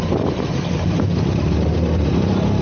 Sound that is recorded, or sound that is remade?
recorded